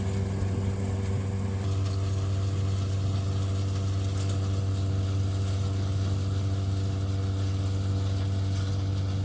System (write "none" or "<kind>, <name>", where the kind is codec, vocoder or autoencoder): none